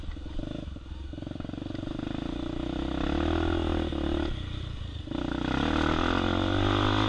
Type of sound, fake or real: real